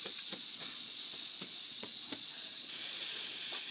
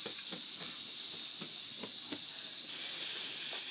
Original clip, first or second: second